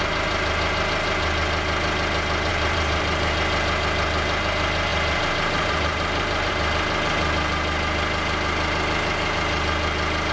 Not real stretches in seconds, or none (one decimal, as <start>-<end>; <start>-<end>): 2.5-3.3; 4.9-6.5